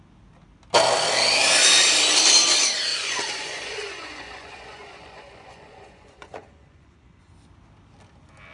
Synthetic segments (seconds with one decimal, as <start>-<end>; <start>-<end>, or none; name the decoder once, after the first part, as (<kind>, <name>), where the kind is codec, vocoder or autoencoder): 2.9-7.2 (vocoder, Vocos)